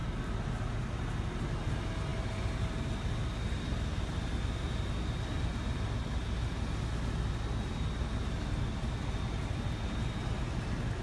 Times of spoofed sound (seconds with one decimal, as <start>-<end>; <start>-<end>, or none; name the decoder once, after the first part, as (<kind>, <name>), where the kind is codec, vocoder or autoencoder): none

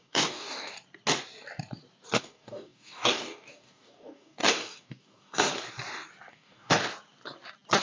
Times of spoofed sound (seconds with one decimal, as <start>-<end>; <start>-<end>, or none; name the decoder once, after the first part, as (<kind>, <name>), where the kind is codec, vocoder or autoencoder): 0.0-0.7 (codec, DAC); 2.2-5.5; 6.3-6.8

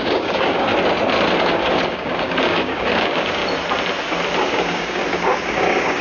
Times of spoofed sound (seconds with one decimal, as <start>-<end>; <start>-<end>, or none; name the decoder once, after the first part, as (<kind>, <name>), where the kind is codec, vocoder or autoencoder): 0.0-0.7 (codec, DAC); 1.4-3.4; 4.4-5.0; 5.5-6.0

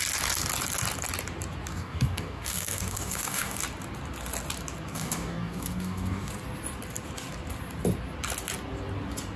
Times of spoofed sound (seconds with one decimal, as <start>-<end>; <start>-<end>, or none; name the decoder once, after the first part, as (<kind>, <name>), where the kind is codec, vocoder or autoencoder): 1.7-3.6 (codec, DAC); 4.9-6.3

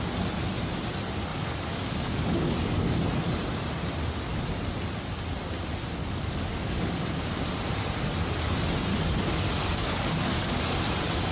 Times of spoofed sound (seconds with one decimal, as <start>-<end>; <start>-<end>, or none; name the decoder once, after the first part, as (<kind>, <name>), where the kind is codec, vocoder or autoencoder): 1.3-2.9 (codec, DAC); 6.0-7.5; 8.9-10.8

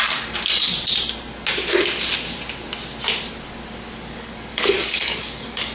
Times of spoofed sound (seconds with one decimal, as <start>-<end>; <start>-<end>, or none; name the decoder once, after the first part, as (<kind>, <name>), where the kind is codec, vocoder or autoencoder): 0.0-0.7 (codec, DAC); 4.1-5.7